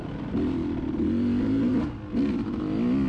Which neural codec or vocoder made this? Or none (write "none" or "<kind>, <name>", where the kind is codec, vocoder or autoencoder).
none